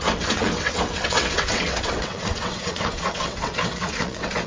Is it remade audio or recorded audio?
remade